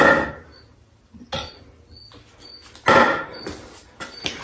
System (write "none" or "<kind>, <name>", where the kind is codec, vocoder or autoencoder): none